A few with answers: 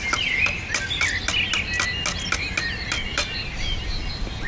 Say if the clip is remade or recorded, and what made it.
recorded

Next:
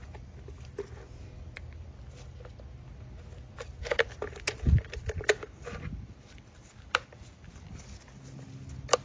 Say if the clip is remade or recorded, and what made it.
recorded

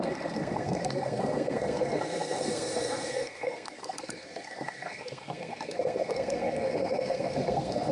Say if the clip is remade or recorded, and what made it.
remade, codec, SNAC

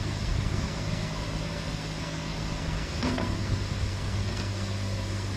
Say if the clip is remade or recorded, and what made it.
remade, codec, SNAC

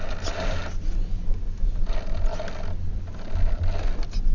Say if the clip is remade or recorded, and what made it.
recorded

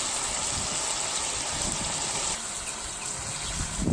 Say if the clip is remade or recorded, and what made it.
recorded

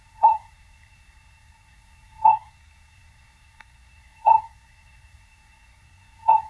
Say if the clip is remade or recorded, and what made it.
remade, codec, SNAC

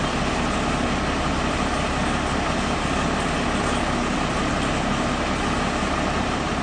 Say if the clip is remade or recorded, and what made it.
recorded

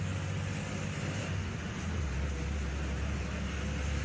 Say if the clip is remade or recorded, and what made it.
recorded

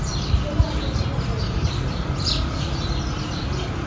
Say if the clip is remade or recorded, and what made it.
recorded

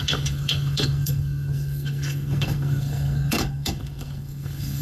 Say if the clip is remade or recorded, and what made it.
remade, codec, SNAC